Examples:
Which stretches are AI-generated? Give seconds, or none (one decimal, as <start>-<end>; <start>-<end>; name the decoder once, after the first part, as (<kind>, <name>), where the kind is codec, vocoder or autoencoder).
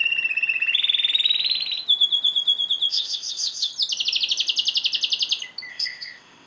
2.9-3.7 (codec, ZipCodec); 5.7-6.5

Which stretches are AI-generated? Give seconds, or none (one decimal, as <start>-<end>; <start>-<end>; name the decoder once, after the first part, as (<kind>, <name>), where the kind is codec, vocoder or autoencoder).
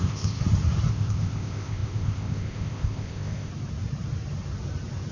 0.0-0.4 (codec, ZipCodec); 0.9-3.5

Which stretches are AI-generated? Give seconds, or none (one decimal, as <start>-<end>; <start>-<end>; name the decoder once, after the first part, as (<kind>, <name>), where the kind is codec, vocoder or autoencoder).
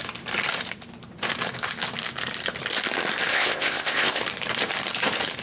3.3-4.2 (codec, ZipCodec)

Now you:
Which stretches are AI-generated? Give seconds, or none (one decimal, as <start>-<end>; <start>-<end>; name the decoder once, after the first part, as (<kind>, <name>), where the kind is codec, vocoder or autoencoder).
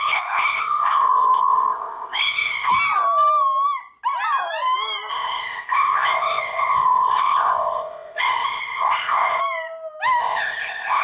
0.0-2.7 (codec, ZipCodec); 5.1-9.4; 10.2-11.0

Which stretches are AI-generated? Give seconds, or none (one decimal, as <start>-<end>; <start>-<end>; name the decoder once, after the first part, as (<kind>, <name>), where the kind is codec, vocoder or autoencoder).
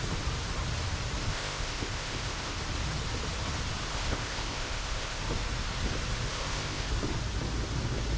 1.3-2.6 (codec, ZipCodec); 3.9-5.2; 6.3-6.9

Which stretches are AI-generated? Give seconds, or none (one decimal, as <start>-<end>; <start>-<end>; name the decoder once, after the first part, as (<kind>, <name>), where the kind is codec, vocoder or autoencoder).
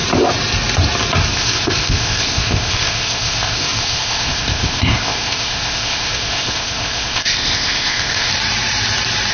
1.3-8.3 (codec, ZipCodec)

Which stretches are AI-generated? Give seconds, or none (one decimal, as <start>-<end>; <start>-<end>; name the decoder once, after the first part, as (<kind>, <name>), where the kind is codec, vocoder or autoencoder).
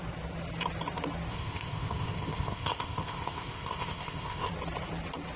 1.3-4.5 (codec, ZipCodec)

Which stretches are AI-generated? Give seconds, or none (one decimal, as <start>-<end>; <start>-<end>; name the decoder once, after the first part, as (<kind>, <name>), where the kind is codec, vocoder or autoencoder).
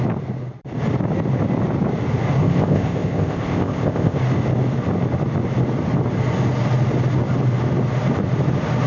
2.4-4.2 (codec, ZipCodec)